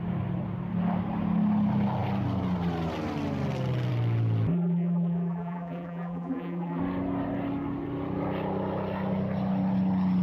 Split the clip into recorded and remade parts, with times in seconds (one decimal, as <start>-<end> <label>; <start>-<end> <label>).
0.0-4.5 recorded; 4.5-6.8 remade; 6.8-10.2 recorded